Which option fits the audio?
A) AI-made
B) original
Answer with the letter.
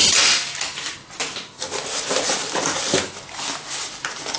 B